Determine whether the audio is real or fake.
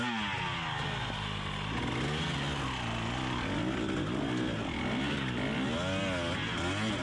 real